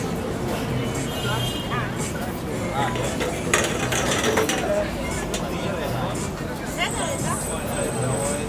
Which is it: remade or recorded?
recorded